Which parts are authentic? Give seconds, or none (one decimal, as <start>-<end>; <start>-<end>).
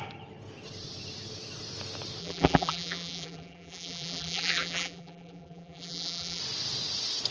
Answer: 0.0-2.2; 6.4-7.3